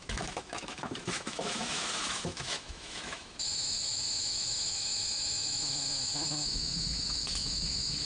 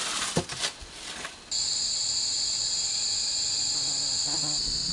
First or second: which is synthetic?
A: first